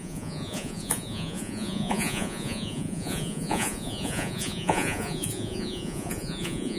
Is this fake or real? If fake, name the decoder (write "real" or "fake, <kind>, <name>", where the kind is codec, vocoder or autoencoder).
fake, vocoder, Vocos